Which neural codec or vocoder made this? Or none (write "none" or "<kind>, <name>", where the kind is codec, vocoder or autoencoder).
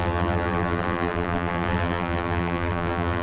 vocoder, BigVGAN v2